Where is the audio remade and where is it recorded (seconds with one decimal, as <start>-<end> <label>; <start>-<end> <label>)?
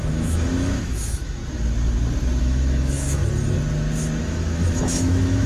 0.0-1.4 remade; 1.4-2.4 recorded; 2.4-3.2 remade; 3.2-4.2 recorded; 4.2-5.5 remade